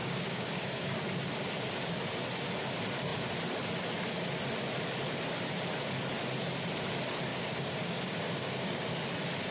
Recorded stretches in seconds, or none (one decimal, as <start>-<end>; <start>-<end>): 1.0-7.3; 8.9-9.5